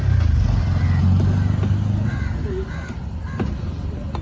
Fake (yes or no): no